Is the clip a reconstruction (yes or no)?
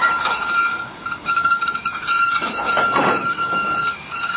yes